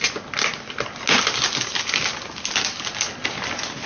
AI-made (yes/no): no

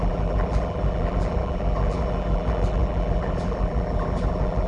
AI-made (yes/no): yes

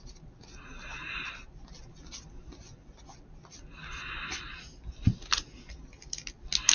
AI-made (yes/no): no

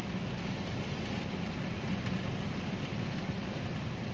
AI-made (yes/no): no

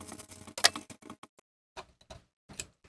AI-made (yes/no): no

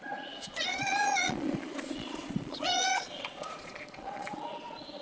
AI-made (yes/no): yes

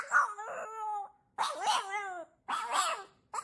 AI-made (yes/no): no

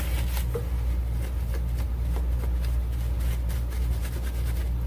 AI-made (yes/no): no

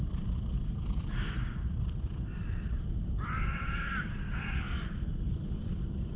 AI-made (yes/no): no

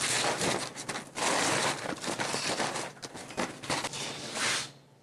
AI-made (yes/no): yes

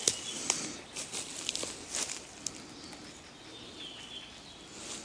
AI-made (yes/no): no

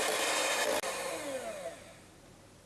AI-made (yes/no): no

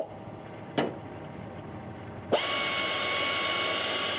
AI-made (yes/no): no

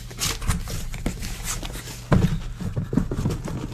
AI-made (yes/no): no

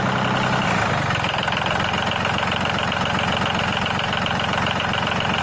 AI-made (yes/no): no